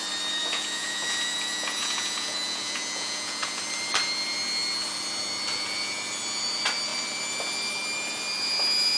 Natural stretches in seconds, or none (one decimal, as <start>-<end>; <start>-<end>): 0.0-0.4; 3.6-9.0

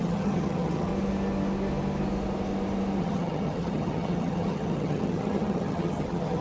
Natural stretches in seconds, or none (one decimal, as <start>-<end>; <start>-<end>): 0.9-3.0

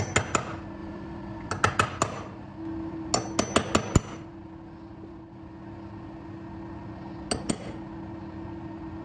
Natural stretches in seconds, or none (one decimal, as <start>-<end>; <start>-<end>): 0.0-0.8; 1.5-9.0

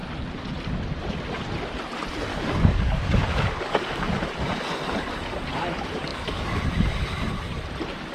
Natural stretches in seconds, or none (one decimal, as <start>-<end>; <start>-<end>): 0.0-2.3; 4.1-6.1; 6.6-8.1